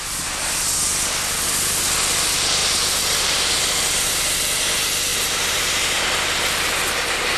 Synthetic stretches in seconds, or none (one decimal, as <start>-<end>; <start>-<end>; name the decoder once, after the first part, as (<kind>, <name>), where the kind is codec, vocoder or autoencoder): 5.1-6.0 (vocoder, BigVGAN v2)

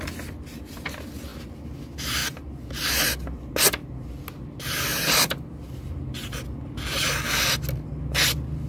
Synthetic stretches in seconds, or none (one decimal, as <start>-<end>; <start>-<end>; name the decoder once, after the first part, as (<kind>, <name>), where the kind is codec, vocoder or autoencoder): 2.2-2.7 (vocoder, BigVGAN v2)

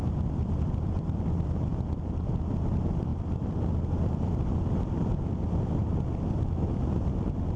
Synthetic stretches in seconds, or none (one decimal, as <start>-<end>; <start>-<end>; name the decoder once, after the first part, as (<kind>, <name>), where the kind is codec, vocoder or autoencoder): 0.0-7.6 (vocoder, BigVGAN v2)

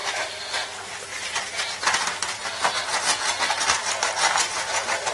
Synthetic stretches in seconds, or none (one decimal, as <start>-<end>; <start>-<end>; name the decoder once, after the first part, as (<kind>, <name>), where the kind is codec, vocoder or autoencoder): 0.6-5.1 (vocoder, BigVGAN v2)

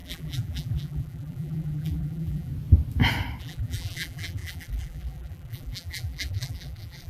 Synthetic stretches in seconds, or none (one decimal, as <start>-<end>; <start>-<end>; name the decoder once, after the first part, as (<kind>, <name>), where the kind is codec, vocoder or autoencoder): 0.0-2.5 (vocoder, BigVGAN v2); 3.4-7.1

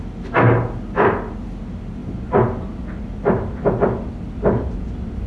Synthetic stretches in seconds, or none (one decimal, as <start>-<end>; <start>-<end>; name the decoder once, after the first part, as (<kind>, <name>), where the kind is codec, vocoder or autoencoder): none

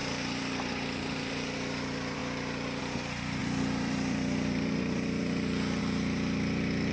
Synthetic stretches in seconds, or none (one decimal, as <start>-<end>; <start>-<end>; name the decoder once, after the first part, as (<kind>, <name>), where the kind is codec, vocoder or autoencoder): 0.0-2.2 (vocoder, BigVGAN v2); 2.8-6.9

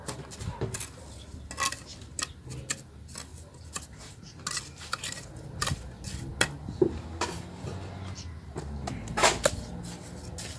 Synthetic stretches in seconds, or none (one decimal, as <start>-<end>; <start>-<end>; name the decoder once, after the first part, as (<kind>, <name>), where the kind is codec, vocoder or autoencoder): none